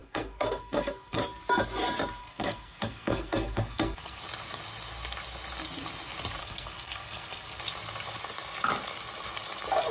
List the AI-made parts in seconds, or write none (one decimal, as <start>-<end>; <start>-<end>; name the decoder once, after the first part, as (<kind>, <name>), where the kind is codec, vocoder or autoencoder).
0.0-1.2 (codec, SNAC); 2.2-4.2; 6.4-7.6